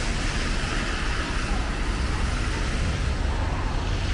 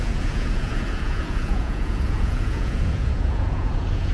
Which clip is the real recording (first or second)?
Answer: first